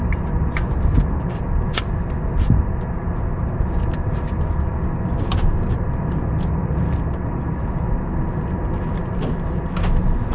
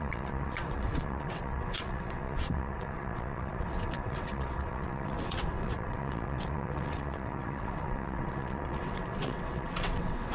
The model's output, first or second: second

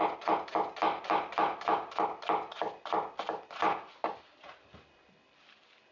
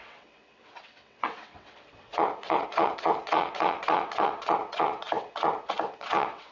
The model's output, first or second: second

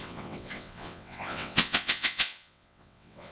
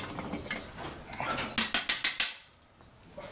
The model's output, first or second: first